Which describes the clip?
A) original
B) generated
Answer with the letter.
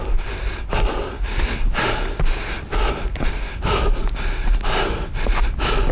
A